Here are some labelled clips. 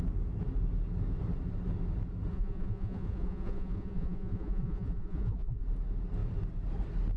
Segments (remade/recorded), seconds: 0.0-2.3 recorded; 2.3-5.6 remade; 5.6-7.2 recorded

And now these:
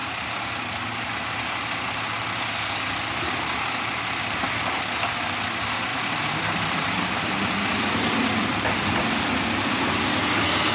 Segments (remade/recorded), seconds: 0.0-5.9 recorded; 5.9-9.2 remade; 9.2-10.7 recorded